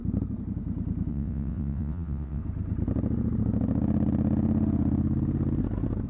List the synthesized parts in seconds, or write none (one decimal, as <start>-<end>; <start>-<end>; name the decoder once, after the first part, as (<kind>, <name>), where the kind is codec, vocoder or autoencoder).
1.1-2.4 (vocoder, WaveNeXt)